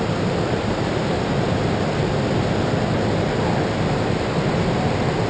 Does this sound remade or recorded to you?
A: recorded